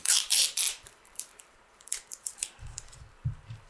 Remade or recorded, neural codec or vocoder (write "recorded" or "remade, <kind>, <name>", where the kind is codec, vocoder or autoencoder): remade, vocoder, BigVGAN v2